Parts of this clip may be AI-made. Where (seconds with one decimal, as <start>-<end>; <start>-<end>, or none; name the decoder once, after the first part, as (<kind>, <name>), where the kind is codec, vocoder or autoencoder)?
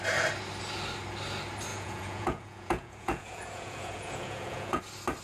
1.7-4.8 (vocoder, Vocos)